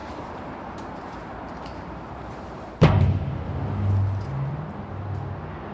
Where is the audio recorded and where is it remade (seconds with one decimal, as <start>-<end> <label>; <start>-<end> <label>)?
0.0-3.4 remade; 3.4-5.7 recorded